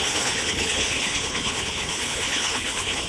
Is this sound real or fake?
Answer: fake